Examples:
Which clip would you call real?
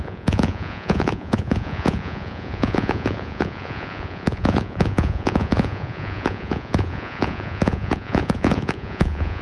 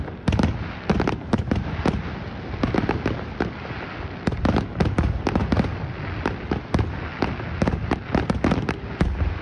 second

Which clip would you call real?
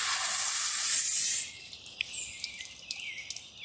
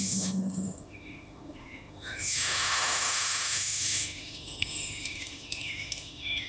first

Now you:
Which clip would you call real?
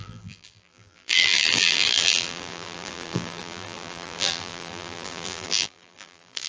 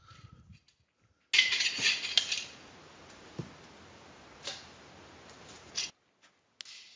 second